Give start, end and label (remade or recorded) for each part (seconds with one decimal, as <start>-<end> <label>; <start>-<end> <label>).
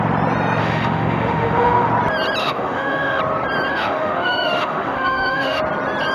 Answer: 0.0-0.6 recorded; 0.6-1.9 remade; 1.9-2.4 recorded; 2.4-3.2 remade; 3.2-3.7 recorded; 3.7-5.6 remade; 5.6-6.1 recorded